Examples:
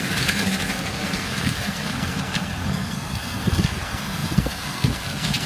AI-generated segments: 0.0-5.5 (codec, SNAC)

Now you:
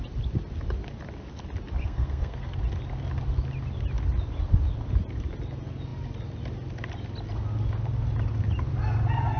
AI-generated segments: 1.8-2.6 (codec, SNAC)

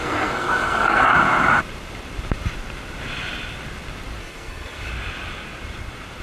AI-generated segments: 0.0-1.1 (codec, SNAC); 4.2-4.9

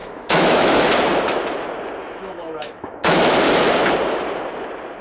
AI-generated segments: 0.0-0.8 (autoencoder, DAC-VAE); 2.0-3.3

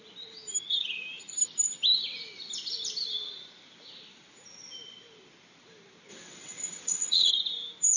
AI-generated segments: 6.1-7.3 (vocoder, WaveNeXt)